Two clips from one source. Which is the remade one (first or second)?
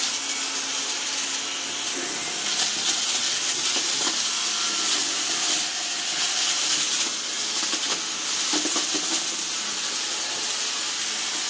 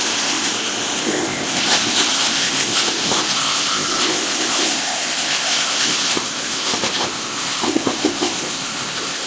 second